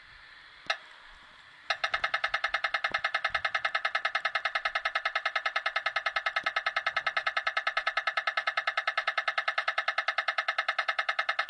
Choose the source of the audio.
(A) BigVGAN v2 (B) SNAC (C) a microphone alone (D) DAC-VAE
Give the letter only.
C